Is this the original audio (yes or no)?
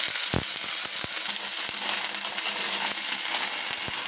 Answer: yes